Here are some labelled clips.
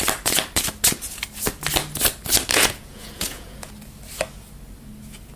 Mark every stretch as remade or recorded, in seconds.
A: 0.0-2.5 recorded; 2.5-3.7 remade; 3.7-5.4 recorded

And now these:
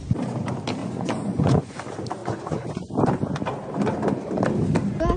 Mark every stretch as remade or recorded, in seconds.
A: 0.0-0.8 recorded; 0.8-1.8 remade; 1.8-2.2 recorded; 2.2-2.9 remade; 2.9-5.2 recorded

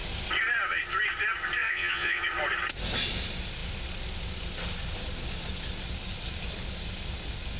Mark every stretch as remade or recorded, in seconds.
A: 0.0-1.6 recorded; 1.6-2.2 remade; 2.2-7.6 recorded

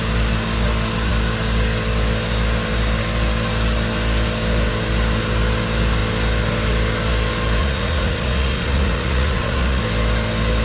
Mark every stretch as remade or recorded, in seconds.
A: 0.0-7.6 recorded; 7.6-9.8 remade; 9.8-10.6 recorded

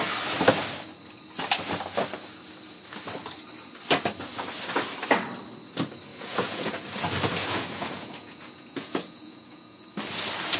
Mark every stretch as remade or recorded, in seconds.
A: 0.0-6.1 recorded; 6.1-6.7 remade; 6.7-7.4 recorded; 7.4-9.8 remade; 9.8-10.6 recorded